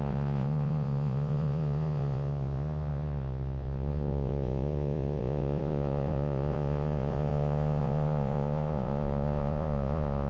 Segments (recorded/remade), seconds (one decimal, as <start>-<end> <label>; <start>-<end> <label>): 0.0-10.3 remade